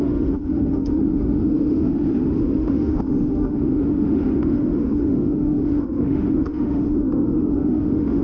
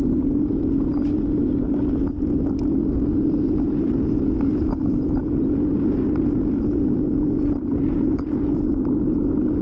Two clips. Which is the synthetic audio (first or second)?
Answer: first